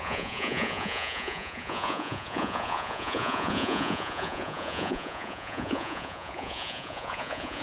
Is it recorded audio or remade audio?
remade